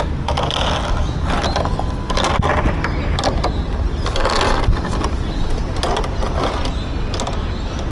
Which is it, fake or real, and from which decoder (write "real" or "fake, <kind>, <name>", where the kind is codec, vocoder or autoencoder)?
real